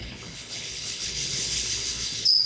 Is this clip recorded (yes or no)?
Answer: no